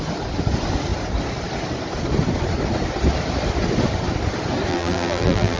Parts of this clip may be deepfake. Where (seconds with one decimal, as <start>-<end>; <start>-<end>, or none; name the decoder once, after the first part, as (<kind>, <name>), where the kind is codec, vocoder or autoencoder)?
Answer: 4.7-5.6 (vocoder, BigVGAN v2)